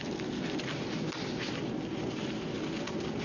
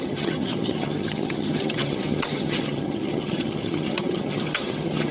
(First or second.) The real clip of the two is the first